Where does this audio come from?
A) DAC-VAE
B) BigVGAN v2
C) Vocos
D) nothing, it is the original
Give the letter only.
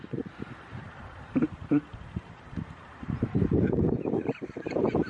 B